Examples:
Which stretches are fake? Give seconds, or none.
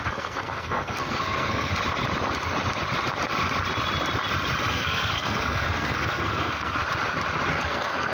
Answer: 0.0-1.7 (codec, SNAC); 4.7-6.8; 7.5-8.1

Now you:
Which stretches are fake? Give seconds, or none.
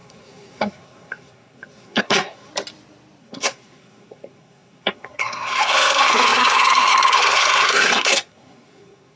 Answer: 0.0-2.5 (codec, SNAC); 3.2-9.2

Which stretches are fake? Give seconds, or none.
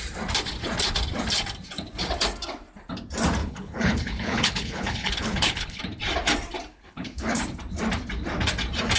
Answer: 3.4-5.8 (codec, HILCodec); 6.7-7.4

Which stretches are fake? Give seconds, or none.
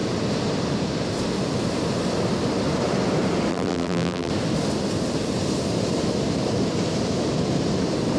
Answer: 3.5-4.3 (vocoder, BigVGAN v2)